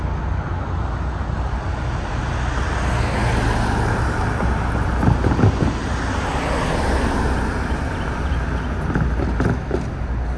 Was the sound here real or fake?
real